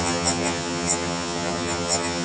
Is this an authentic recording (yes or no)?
no